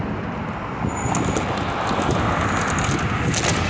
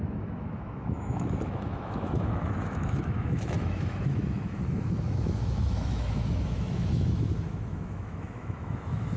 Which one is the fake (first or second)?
second